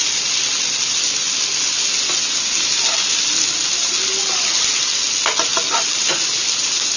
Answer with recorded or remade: recorded